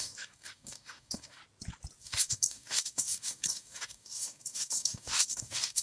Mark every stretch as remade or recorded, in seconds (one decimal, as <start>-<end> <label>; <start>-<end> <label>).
0.0-1.4 remade; 1.4-2.0 recorded; 2.0-5.8 remade